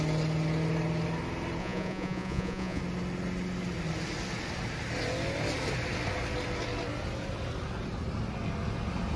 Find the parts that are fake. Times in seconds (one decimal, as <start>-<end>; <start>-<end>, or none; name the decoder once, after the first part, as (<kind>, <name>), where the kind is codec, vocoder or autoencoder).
1.6-2.8 (vocoder, Vocos)